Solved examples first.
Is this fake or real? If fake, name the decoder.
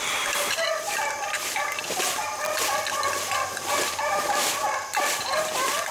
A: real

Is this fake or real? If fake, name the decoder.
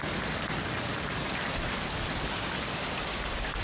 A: real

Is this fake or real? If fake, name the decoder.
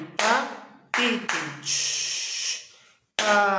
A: real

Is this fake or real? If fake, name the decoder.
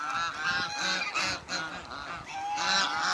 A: real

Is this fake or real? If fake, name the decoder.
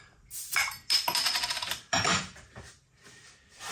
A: real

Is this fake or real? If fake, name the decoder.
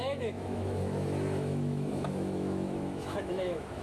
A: fake, autoencoder, DAC-VAE